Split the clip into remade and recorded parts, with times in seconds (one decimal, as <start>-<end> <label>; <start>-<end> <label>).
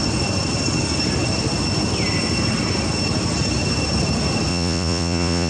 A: 0.0-4.5 recorded; 4.5-5.5 remade